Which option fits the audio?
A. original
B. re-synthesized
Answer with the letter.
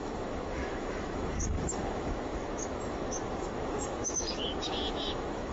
B